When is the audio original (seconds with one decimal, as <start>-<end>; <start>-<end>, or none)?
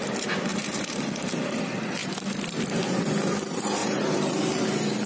0.0-0.5; 1.1-3.8; 4.6-5.1